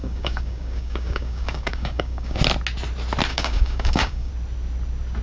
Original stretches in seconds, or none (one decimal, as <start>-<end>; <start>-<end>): 2.4-3.3; 4.3-5.2